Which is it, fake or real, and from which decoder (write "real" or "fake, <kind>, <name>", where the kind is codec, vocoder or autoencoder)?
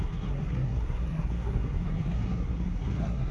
fake, codec, SNAC